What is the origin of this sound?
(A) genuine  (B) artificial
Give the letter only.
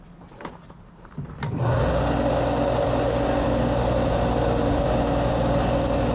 A